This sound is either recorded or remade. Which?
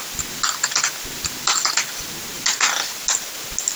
recorded